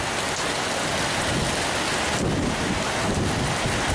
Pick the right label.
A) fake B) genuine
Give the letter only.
B